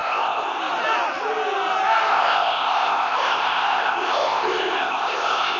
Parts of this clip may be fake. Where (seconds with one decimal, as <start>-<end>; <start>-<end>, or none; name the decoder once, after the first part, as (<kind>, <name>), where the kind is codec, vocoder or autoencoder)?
0.0-0.6 (codec, ZipCodec); 2.1-5.6